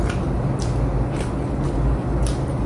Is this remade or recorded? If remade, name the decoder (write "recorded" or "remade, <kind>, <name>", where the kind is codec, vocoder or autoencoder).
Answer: recorded